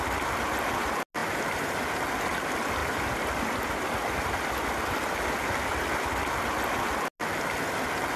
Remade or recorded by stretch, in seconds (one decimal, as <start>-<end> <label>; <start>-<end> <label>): 0.0-1.2 recorded; 1.2-1.8 remade; 1.8-8.2 recorded